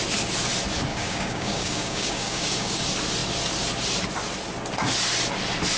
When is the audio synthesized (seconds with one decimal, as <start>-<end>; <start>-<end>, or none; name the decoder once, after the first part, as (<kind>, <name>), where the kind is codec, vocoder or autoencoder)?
0.9-2.8 (codec, DAC)